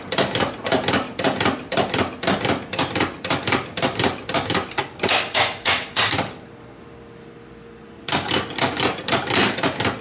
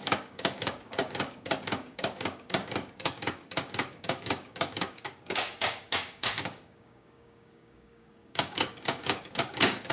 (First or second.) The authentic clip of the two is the first